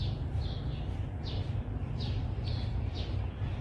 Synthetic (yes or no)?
no